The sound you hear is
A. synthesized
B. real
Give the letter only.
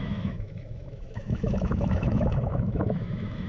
A